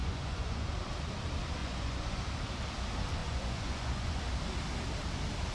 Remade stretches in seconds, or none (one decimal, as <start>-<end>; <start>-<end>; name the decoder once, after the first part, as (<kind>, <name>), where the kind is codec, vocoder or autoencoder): 0.0-0.7 (vocoder, Vocos); 1.6-2.2; 3.2-4.2